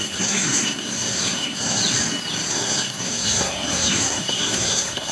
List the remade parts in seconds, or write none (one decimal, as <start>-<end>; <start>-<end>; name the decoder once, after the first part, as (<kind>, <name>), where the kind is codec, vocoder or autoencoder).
0.0-1.8 (codec, SNAC); 2.5-5.1